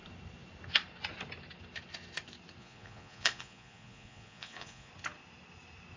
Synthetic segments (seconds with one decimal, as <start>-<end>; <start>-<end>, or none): 2.6-4.9